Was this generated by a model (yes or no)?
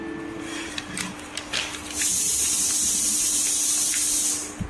no